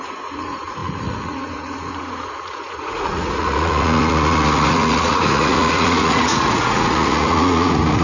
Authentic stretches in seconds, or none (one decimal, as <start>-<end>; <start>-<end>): none